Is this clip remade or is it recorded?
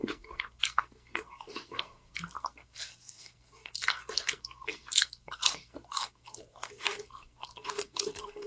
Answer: remade